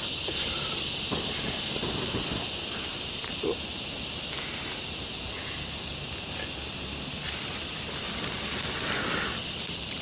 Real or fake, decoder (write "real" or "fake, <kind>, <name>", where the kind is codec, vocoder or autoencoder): real